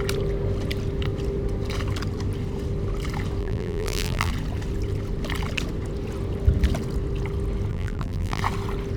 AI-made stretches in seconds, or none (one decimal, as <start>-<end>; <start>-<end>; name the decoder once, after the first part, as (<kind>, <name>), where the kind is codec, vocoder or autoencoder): 3.4-4.3 (vocoder, BigVGAN v2); 7.7-8.4